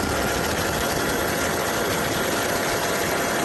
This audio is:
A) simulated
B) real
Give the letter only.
B